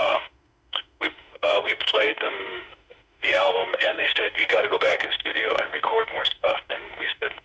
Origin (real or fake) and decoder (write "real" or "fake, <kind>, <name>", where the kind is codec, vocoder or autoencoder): fake, autoencoder, DAC-VAE